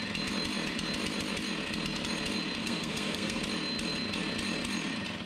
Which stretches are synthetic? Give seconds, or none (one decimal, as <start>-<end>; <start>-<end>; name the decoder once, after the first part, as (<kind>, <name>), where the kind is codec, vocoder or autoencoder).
2.6-3.4 (codec, SNAC)